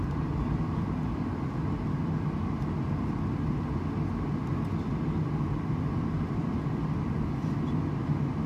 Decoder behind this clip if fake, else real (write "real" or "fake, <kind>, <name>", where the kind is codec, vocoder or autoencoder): real